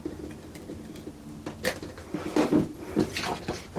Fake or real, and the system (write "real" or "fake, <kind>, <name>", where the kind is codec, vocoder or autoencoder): real